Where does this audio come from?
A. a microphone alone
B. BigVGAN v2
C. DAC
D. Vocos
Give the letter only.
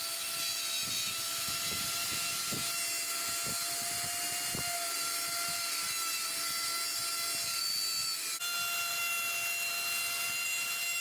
A